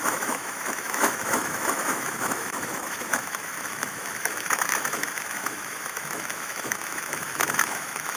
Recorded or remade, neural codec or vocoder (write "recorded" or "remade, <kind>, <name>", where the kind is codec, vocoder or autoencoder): remade, autoencoder, DAC-VAE